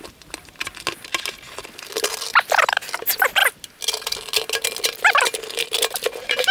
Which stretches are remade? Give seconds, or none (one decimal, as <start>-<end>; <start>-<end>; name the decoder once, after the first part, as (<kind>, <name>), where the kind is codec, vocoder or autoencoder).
none